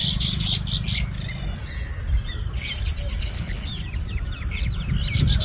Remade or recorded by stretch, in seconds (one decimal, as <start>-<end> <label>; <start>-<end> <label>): 0.0-3.2 recorded; 3.2-3.7 remade; 3.7-5.4 recorded